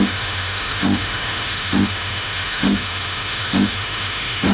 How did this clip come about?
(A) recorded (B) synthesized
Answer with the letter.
B